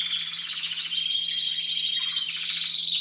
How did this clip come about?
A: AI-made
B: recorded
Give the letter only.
B